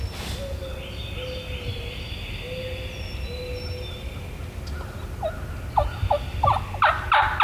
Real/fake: real